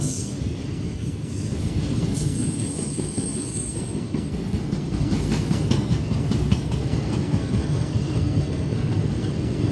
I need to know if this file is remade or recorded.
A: remade